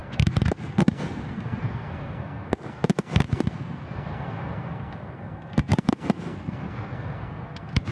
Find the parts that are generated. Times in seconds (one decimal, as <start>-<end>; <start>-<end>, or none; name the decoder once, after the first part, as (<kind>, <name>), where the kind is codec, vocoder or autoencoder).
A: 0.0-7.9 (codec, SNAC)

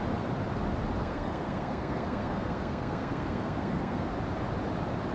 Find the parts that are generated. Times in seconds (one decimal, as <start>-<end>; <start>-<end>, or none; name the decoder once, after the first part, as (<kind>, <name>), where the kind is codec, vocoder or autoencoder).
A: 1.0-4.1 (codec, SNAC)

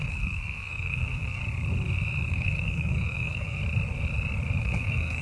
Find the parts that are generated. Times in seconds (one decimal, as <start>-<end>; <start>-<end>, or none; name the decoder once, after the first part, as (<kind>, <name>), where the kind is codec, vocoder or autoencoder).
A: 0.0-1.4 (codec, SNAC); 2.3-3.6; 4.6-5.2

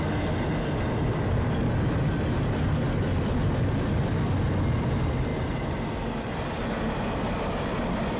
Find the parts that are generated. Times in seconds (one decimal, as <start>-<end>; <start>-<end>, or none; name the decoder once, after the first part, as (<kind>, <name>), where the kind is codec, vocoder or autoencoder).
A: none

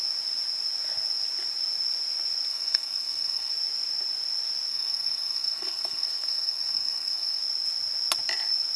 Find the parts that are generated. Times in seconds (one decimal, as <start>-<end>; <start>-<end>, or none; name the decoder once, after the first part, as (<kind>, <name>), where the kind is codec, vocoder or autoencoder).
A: 2.5-3.5 (codec, SNAC); 4.7-7.4